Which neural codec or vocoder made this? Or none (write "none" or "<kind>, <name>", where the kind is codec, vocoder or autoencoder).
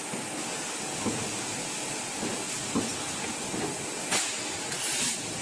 none